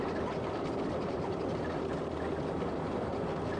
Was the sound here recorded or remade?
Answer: recorded